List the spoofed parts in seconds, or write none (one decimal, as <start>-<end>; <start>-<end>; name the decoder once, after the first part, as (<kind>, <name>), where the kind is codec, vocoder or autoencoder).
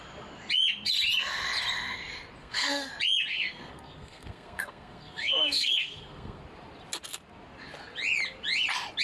2.4-2.9 (codec, SNAC); 3.3-6.4